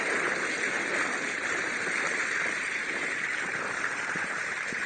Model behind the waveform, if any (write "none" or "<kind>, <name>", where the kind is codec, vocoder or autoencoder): vocoder, BigVGAN v2